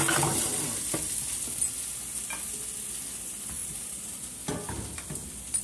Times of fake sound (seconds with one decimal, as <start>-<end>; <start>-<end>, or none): 3.6-4.5